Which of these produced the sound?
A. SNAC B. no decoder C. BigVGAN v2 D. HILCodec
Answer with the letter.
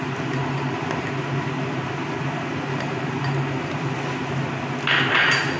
B